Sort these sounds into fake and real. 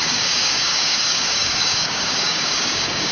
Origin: fake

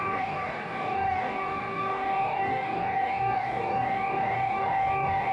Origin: fake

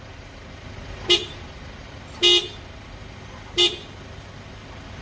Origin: real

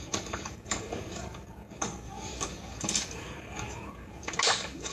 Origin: fake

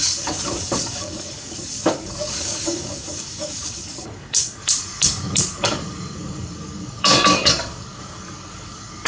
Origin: fake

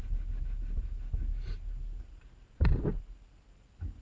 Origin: real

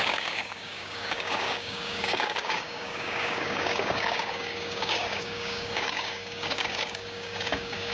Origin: fake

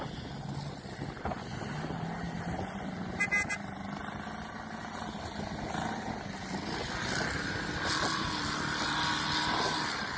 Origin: real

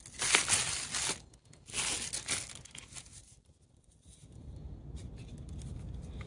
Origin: real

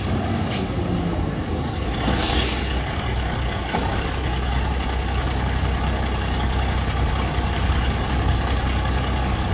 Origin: fake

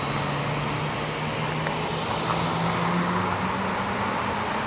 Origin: real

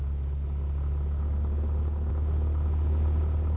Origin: real